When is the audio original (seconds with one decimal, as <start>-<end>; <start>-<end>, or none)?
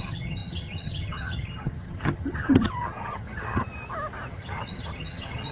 3.7-4.3